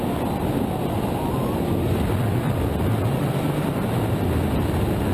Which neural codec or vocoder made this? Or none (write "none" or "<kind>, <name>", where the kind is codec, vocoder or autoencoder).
none